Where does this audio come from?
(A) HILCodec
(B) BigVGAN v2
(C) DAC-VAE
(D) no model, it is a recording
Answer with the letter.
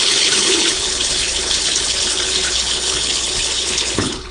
A